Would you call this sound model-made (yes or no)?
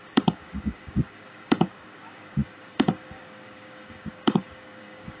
yes